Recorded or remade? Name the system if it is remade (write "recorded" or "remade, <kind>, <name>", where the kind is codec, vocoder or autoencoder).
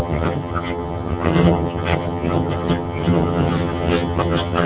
remade, vocoder, HiFi-GAN